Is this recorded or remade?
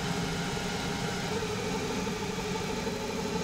recorded